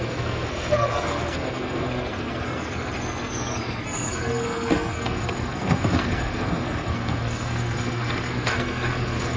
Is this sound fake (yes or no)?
yes